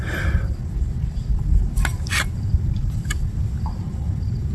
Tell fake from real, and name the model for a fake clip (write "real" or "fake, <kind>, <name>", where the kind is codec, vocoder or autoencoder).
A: real